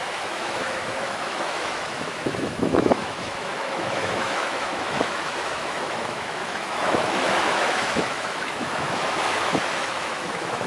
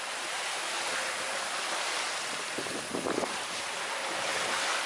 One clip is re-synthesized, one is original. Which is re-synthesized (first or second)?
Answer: first